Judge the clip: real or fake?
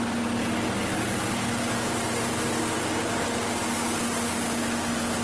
real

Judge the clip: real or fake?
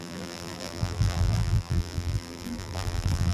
fake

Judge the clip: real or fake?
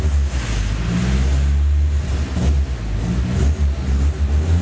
real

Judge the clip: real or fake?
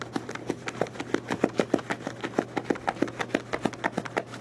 real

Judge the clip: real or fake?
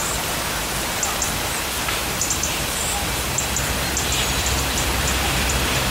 real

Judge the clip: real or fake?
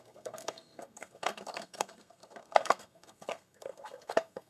fake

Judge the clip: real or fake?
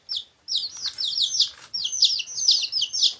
real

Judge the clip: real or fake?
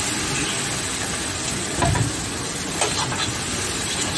real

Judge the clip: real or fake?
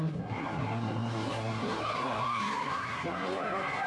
fake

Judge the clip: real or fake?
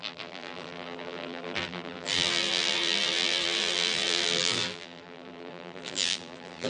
fake